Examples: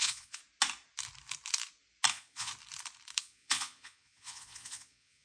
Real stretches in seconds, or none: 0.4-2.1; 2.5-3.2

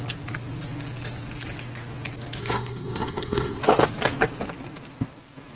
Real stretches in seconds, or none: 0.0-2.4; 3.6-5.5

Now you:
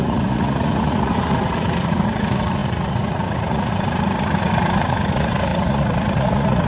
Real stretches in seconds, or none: none